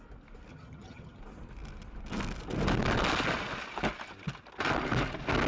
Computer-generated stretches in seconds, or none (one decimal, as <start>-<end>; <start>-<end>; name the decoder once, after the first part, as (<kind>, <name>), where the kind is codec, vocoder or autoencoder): 0.5-1.2 (vocoder, HiFi-GAN)